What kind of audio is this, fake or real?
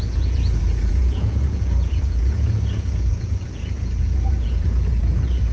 fake